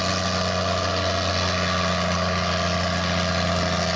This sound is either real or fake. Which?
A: real